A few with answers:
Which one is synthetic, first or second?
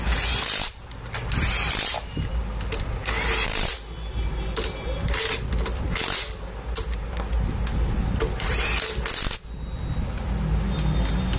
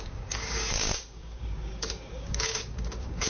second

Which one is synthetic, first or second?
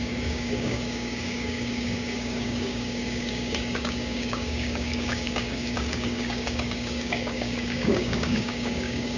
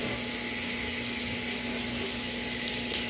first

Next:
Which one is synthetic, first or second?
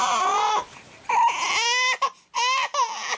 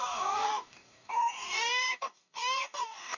second